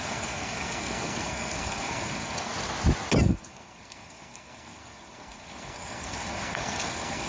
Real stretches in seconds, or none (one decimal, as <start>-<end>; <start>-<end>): 2.5-3.2